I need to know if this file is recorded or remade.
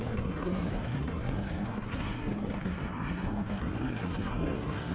remade